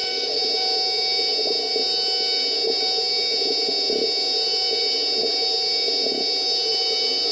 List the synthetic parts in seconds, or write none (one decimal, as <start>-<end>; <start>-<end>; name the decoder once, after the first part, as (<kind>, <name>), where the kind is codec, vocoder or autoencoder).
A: none